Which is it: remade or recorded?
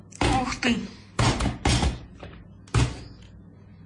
recorded